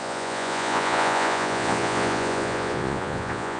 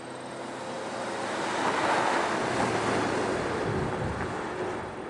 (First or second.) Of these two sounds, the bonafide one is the second